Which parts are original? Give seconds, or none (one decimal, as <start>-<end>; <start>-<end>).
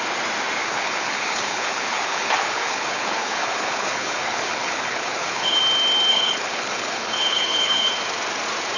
0.0-0.6; 5.6-6.1; 7.9-8.8